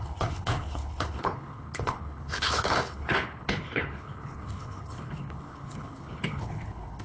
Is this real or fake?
fake